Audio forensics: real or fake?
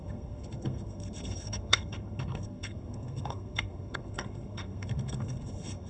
fake